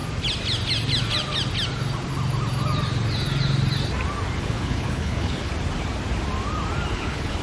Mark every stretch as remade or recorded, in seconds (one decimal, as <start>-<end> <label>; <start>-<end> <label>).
0.0-4.4 recorded; 4.4-5.5 remade; 5.5-6.9 recorded; 6.9-7.4 remade

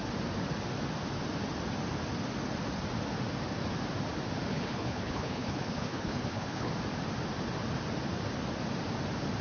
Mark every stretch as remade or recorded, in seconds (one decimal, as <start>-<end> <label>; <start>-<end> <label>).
0.0-4.5 recorded; 4.5-6.7 remade; 6.7-9.4 recorded

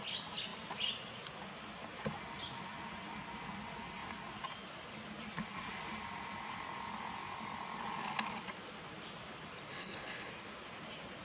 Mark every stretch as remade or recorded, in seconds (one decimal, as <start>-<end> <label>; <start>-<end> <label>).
0.0-9.7 recorded; 9.7-10.3 remade; 10.3-11.2 recorded

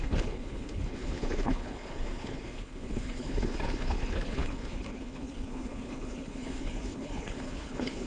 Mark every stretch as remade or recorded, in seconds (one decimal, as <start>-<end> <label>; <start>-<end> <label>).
0.0-8.1 remade

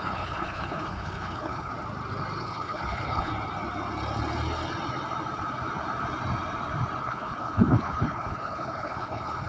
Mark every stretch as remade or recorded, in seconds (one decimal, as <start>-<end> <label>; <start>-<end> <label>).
0.0-1.7 remade; 1.7-2.4 recorded; 2.4-3.3 remade; 3.3-7.0 recorded; 7.0-9.5 remade

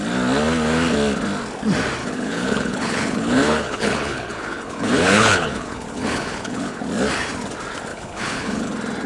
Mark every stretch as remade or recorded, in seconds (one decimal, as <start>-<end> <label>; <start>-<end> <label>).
0.0-2.0 recorded; 2.0-6.8 remade; 6.8-7.9 recorded; 7.9-8.7 remade; 8.7-9.1 recorded

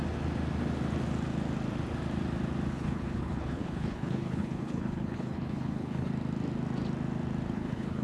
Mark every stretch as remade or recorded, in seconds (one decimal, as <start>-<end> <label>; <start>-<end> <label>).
0.0-2.7 recorded; 2.7-6.1 remade; 6.1-7.5 recorded; 7.5-8.0 remade

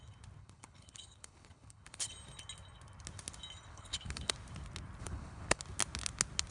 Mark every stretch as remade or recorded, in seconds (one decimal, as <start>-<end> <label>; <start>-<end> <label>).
0.0-0.4 recorded; 0.4-2.1 remade; 2.1-3.7 recorded; 3.7-4.3 remade; 4.3-5.0 recorded; 5.0-5.6 remade; 5.6-6.5 recorded